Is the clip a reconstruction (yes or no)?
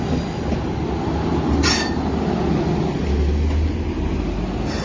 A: no